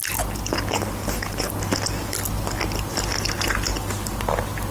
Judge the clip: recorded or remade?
recorded